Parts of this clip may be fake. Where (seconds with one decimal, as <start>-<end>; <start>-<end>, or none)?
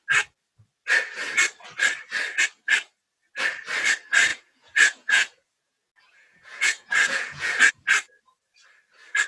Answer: 4.3-7.7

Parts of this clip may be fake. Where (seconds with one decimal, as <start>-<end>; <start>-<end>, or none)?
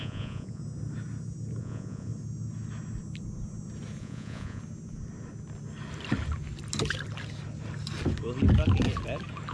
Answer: 0.0-0.6; 1.6-2.1; 4.0-4.6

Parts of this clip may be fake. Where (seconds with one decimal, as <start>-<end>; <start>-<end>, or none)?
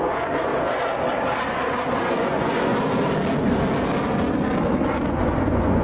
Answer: 0.0-0.5; 2.0-2.7; 5.1-5.8